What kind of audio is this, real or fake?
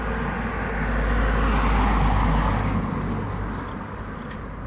real